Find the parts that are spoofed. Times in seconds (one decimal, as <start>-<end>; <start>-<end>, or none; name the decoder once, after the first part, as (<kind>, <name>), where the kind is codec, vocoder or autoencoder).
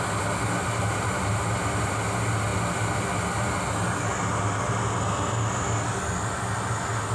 none